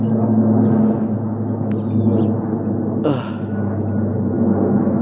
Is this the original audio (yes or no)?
yes